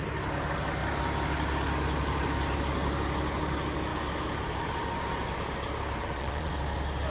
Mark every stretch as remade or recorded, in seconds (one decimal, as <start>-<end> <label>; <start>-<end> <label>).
0.0-6.0 recorded; 6.0-6.5 remade; 6.5-7.1 recorded